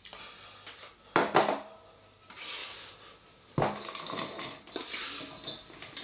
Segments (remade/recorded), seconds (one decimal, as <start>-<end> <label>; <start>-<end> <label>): 0.0-6.0 recorded